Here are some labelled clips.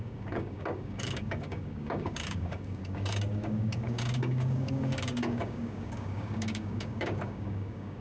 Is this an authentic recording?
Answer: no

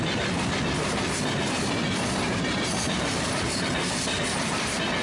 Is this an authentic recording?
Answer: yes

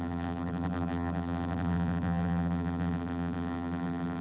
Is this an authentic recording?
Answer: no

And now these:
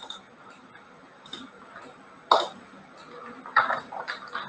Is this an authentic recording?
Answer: yes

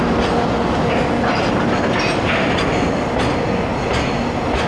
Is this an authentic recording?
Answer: yes